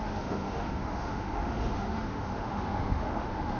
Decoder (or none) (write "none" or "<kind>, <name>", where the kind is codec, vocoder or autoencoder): autoencoder, DAC-VAE